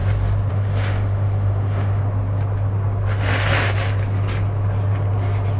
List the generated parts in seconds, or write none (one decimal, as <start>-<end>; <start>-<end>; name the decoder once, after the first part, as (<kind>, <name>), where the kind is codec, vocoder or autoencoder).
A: 0.5-2.0 (autoencoder, DAC-VAE)